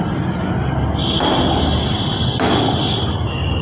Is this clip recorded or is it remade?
recorded